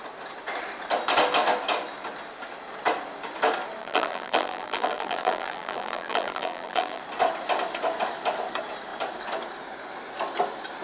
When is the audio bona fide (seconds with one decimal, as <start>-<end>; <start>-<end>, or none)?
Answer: 0.0-3.8; 7.0-10.8